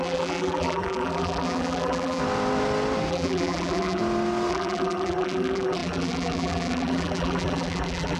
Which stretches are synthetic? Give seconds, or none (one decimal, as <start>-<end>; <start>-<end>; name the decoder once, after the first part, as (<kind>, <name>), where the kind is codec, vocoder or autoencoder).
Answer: 0.0-2.2 (vocoder, BigVGAN v2); 3.1-4.0; 4.5-8.2